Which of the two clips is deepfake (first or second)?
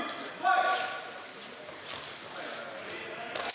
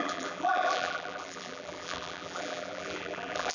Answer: second